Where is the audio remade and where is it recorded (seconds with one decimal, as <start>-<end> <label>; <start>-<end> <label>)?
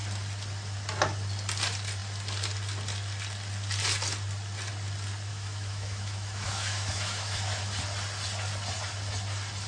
0.0-5.3 recorded; 5.3-7.6 remade; 7.6-9.7 recorded